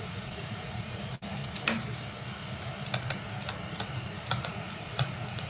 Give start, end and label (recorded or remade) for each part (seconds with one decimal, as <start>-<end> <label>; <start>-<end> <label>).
0.0-1.4 remade; 1.4-4.4 recorded; 4.4-5.5 remade

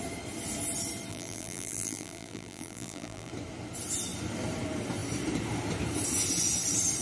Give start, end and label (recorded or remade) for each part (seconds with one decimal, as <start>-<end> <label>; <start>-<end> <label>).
0.0-1.1 recorded; 1.1-3.3 remade; 3.3-7.0 recorded

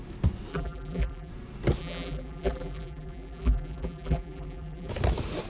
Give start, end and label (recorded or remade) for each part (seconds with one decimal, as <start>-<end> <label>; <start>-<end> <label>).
0.0-0.5 recorded; 0.5-1.3 remade; 1.3-1.8 recorded; 1.8-4.9 remade; 4.9-5.5 recorded

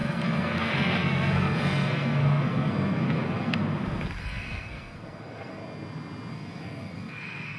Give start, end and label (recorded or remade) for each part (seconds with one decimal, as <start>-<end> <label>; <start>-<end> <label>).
0.0-3.6 remade; 3.6-4.2 recorded; 4.2-5.6 remade; 5.6-6.3 recorded; 6.3-7.6 remade

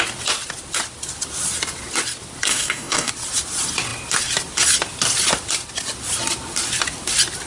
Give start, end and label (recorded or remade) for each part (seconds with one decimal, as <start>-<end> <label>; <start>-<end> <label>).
0.0-2.5 recorded; 2.5-3.1 remade; 3.1-7.5 recorded

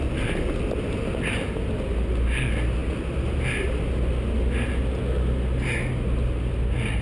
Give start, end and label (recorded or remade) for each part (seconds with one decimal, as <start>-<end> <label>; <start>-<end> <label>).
0.0-7.0 recorded

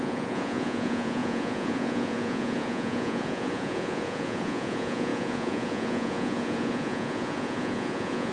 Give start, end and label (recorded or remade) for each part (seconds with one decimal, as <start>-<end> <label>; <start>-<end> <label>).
0.0-8.3 remade

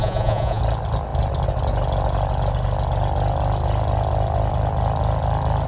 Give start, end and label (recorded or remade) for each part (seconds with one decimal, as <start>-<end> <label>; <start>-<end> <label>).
0.0-0.6 remade; 0.6-5.7 recorded